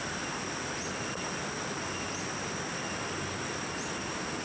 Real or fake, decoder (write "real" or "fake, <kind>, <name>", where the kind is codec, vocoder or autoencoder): real